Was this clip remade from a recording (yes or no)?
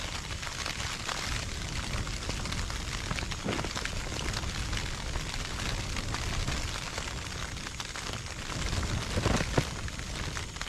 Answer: no